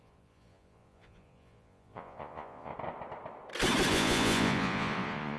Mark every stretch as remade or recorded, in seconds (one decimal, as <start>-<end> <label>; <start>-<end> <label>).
0.0-2.7 remade; 2.7-3.9 recorded; 3.9-5.4 remade